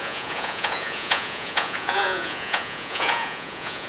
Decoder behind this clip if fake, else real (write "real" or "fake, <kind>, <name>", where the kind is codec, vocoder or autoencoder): fake, vocoder, Vocos